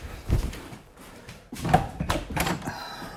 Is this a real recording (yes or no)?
no